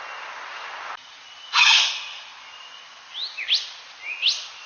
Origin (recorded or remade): recorded